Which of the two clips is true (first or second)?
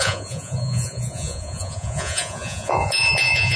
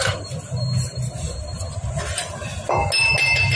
second